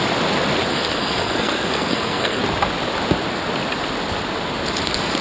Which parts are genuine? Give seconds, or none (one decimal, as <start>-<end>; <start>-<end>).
0.0-0.7; 2.4-5.2